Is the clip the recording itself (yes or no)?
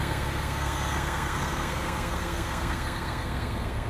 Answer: no